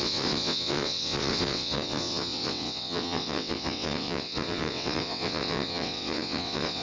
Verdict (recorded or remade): remade